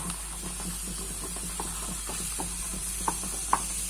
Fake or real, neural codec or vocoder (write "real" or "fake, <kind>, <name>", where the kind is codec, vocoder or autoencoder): real